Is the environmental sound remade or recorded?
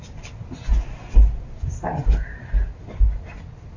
recorded